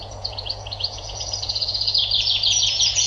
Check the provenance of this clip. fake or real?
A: fake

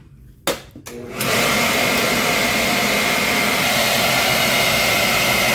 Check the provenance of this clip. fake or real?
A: real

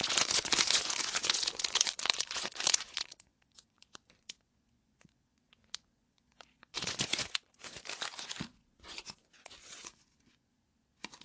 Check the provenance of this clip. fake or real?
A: fake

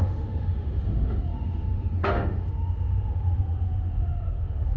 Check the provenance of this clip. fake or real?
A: fake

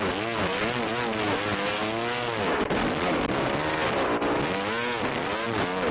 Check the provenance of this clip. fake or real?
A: real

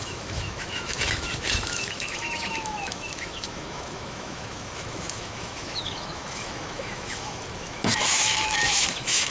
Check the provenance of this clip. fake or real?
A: fake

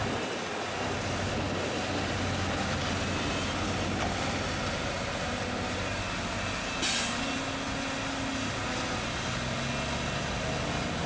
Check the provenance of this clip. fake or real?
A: real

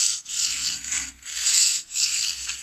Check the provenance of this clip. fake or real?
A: fake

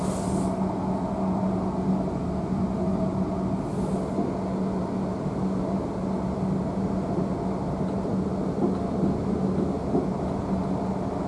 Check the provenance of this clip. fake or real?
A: real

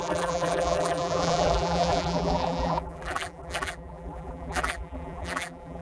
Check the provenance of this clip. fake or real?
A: fake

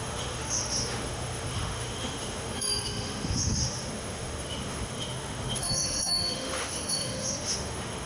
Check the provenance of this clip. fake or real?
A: fake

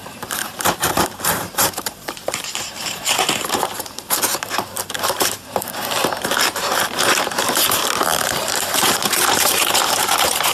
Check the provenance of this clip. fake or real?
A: fake